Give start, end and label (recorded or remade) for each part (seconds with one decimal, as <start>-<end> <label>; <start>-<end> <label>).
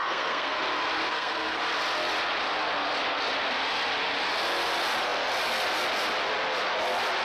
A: 0.0-0.6 remade; 0.6-1.1 recorded; 1.1-1.6 remade; 1.6-7.2 recorded